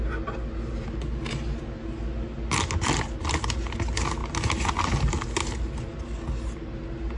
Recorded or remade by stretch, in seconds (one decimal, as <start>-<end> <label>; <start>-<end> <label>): 0.0-7.2 recorded